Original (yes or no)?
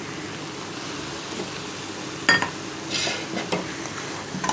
yes